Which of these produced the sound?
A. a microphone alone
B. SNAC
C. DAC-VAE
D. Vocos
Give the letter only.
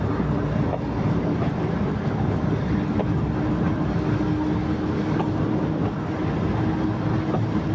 A